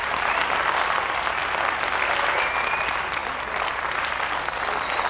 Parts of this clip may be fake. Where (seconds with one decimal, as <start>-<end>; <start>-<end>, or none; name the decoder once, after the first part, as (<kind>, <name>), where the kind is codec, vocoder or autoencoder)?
none